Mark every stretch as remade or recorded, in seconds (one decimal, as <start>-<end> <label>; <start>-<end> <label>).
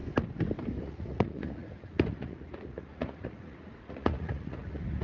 0.0-0.8 recorded; 0.8-5.0 remade